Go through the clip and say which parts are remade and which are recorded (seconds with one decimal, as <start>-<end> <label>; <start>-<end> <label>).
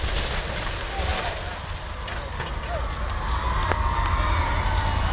0.0-5.1 recorded